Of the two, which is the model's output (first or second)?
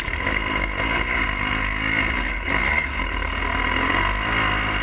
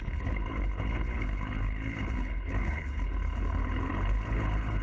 second